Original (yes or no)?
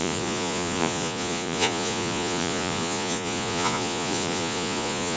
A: no